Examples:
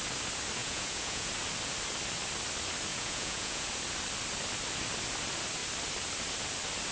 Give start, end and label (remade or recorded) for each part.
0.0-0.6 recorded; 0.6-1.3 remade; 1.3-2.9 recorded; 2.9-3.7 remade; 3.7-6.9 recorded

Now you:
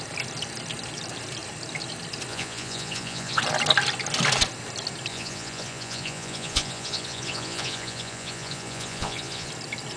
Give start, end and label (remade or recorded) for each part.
0.0-2.3 recorded; 2.3-3.4 remade; 3.4-5.1 recorded; 5.1-9.5 remade; 9.5-10.0 recorded

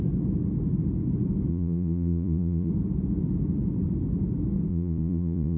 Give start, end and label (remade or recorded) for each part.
0.0-1.5 recorded; 1.5-2.7 remade; 2.7-4.7 recorded; 4.7-5.6 remade